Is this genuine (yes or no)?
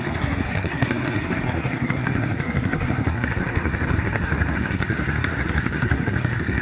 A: no